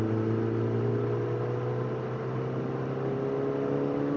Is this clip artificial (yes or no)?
no